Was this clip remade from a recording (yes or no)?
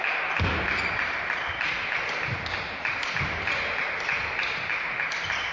no